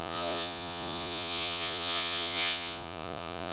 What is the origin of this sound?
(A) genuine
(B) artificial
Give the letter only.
B